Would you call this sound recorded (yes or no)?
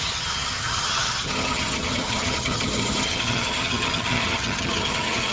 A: no